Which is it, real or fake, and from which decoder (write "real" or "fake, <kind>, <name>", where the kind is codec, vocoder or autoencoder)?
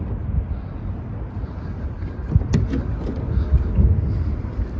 real